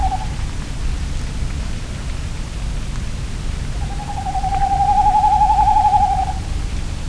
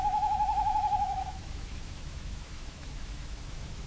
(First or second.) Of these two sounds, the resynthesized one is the second